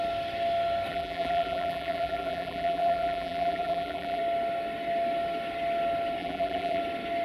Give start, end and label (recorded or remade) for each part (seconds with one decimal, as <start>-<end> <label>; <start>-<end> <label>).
0.0-0.9 recorded; 0.9-4.2 remade; 4.2-6.2 recorded; 6.2-6.8 remade; 6.8-7.2 recorded